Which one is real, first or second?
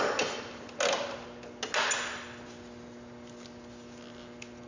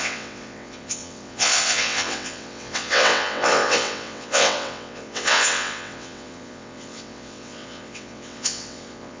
first